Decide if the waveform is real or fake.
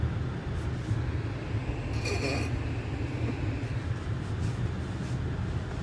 real